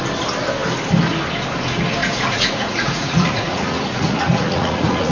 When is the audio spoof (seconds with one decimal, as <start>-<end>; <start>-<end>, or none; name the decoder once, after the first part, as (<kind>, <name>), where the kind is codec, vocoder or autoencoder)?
2.0-5.1 (vocoder, Vocos)